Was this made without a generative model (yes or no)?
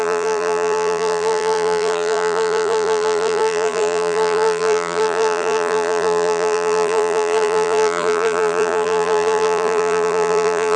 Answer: no